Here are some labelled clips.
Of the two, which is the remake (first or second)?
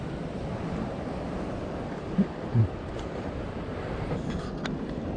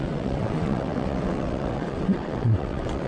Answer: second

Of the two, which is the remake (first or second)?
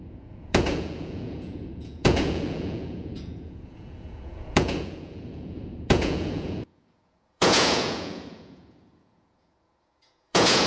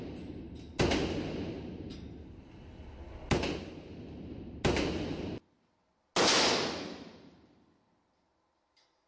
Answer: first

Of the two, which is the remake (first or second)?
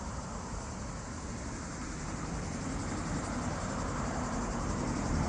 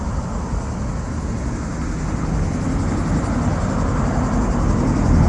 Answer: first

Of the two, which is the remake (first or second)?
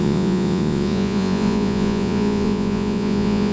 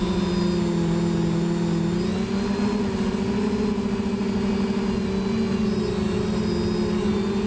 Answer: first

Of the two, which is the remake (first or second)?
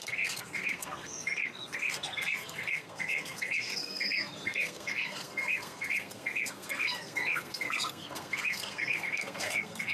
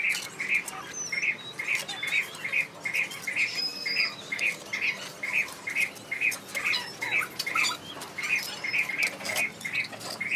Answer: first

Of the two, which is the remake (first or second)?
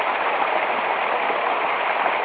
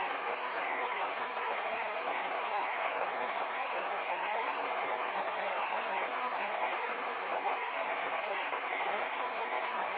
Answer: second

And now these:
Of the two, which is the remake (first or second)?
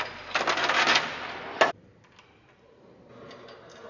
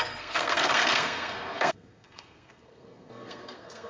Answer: second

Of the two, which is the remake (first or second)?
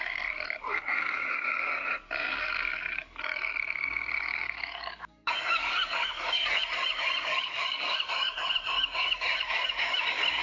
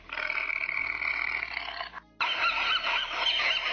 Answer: first